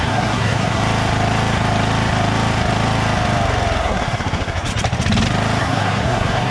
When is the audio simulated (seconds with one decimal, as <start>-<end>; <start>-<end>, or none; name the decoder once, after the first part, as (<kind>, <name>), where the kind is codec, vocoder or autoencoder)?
0.0-0.8 (codec, SNAC); 3.8-4.7; 5.6-6.5